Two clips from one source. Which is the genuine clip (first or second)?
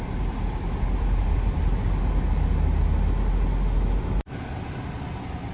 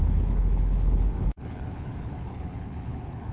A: first